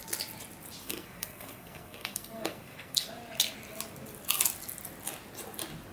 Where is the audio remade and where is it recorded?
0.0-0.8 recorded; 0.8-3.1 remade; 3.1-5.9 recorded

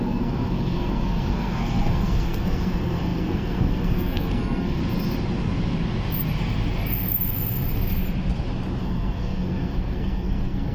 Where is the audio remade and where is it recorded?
0.0-4.8 remade; 4.8-8.8 recorded; 8.8-10.7 remade